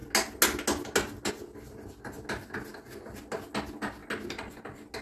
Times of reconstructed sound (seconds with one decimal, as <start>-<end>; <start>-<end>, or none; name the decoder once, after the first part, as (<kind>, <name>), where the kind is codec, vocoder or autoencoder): none